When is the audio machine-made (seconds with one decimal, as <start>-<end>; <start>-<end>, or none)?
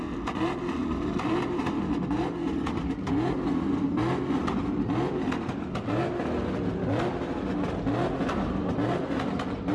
0.8-3.1